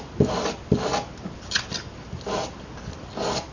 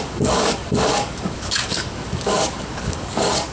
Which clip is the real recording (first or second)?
first